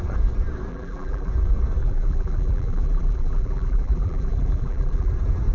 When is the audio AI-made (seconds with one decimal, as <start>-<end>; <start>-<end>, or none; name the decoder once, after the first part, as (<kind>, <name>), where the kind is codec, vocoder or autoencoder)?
0.7-1.3 (vocoder, BigVGAN v2); 1.8-5.1